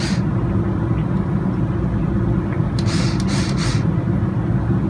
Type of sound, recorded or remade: recorded